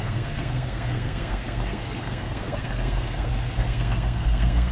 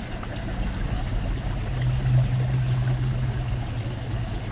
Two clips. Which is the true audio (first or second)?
second